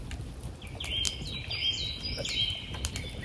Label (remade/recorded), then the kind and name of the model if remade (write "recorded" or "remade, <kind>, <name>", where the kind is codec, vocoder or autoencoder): recorded